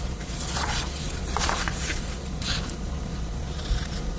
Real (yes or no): no